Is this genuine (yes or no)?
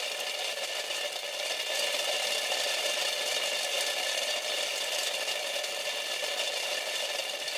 yes